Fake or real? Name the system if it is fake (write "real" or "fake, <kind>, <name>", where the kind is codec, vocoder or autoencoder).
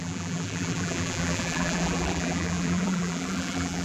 fake, vocoder, BigVGAN v2